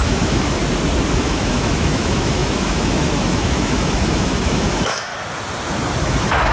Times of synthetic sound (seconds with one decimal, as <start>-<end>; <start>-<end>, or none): 0.0-0.6; 1.1-5.1; 6.0-6.5